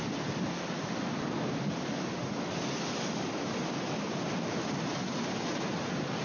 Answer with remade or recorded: recorded